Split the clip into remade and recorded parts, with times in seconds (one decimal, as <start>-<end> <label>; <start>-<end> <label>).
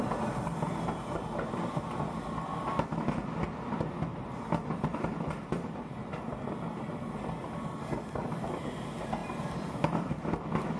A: 0.0-4.1 recorded; 4.1-6.2 remade; 6.2-9.2 recorded; 9.2-10.1 remade; 10.1-10.8 recorded